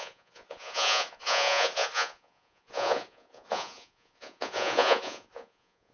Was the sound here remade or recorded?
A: remade